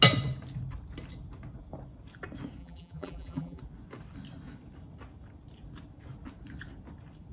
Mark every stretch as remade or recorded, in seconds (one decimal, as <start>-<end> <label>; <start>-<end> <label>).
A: 0.0-2.6 recorded; 2.6-3.6 remade; 3.6-7.3 recorded